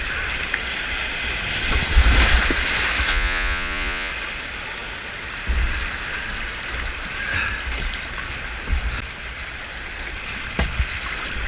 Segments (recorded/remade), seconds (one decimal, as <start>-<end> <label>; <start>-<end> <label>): 0.0-3.1 recorded; 3.1-4.1 remade; 4.1-11.5 recorded